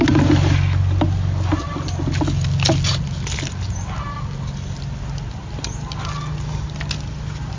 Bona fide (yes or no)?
yes